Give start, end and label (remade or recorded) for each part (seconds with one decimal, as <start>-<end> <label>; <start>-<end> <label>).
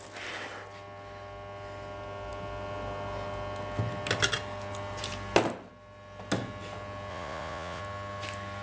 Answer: 0.0-7.1 recorded; 7.1-7.8 remade; 7.8-8.6 recorded